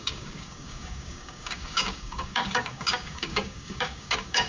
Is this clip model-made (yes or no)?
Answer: yes